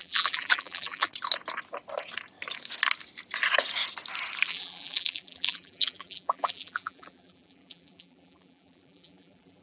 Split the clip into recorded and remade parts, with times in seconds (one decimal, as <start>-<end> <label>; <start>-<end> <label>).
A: 0.0-1.1 remade; 1.1-4.5 recorded; 4.5-9.6 remade